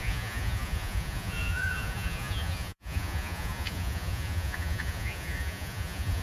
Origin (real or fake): fake